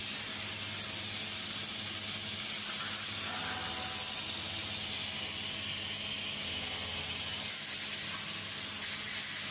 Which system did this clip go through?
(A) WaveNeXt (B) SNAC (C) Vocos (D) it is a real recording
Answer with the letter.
D